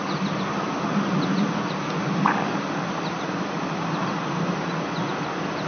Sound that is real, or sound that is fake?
real